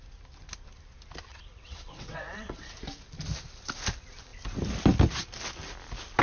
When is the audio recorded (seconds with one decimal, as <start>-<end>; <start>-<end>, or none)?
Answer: 0.0-1.3; 2.7-6.2